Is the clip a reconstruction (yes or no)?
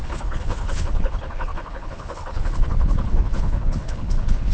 yes